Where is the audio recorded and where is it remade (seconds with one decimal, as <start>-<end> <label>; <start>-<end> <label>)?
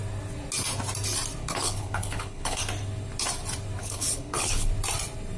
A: 0.0-1.4 recorded; 1.4-2.6 remade; 2.6-3.8 recorded; 3.8-4.7 remade; 4.7-5.4 recorded